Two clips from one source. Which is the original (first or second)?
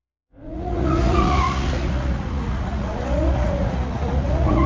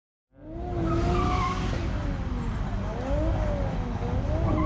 second